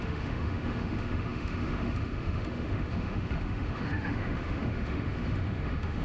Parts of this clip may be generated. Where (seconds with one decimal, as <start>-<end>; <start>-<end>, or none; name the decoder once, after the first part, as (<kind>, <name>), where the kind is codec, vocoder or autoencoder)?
0.0-6.0 (autoencoder, DAC-VAE)